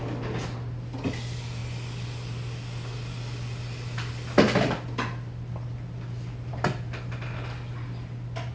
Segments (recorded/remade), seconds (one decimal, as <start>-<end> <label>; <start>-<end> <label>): 0.0-8.5 recorded